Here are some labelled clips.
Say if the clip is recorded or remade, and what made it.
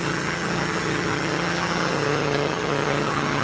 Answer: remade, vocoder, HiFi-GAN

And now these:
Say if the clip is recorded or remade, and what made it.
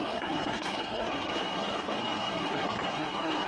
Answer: remade, codec, SNAC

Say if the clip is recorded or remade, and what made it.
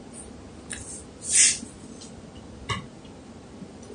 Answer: recorded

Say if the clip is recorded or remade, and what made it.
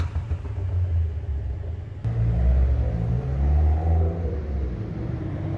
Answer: recorded